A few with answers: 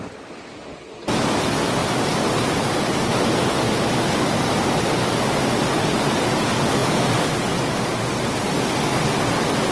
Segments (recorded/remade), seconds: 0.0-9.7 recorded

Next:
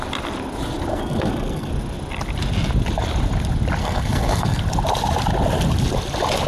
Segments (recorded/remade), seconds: 0.0-0.9 recorded; 0.9-1.7 remade; 1.7-3.8 recorded; 3.8-4.6 remade; 4.6-6.5 recorded

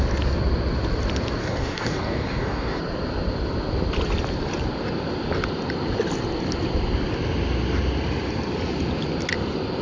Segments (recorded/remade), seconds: 0.0-1.4 recorded; 1.4-2.8 remade; 2.8-9.8 recorded

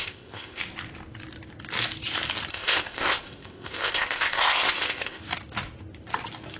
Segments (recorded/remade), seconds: 0.0-0.6 remade; 0.6-2.5 recorded; 2.5-5.2 remade; 5.2-6.6 recorded

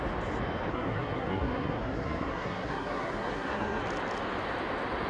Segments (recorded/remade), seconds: 0.0-0.7 recorded; 0.7-3.8 remade; 3.8-5.1 recorded